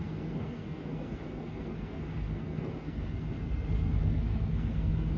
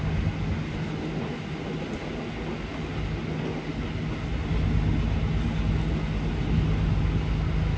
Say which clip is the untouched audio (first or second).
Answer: second